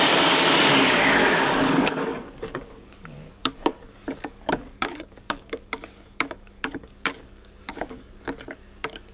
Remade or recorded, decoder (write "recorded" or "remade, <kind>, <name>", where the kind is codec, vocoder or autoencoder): remade, codec, DAC